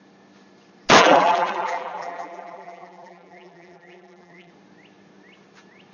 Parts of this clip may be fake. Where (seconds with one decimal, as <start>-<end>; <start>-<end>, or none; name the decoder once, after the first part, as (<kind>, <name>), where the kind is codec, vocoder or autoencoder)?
1.0-4.5 (vocoder, BigVGAN v2)